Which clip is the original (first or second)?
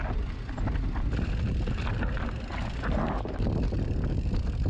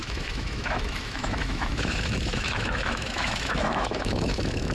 first